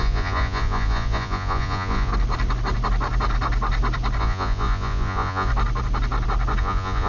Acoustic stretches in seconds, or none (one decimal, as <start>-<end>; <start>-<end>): 2.1-4.2; 5.5-6.6

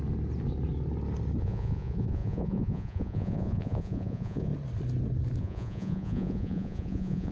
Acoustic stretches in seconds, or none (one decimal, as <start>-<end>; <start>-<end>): 0.0-1.4; 4.5-5.4

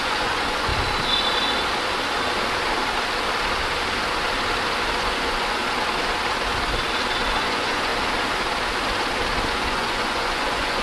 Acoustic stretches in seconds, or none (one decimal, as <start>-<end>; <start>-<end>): 0.7-5.0; 5.6-7.3; 7.9-9.5

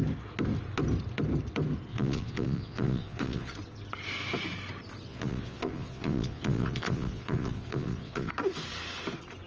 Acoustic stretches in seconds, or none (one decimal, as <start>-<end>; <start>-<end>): 0.0-1.9; 3.5-5.1; 8.3-9.5

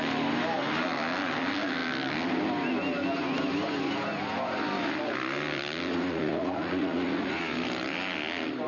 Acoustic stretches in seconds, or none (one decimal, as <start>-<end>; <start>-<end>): 0.0-5.9; 7.4-8.7